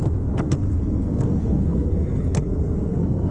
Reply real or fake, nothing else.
fake